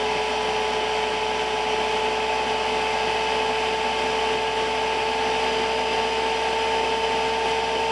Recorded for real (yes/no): yes